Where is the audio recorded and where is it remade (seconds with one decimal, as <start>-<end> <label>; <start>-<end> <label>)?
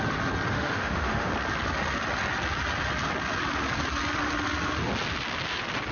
0.0-0.5 recorded; 0.5-1.3 remade; 1.3-5.9 recorded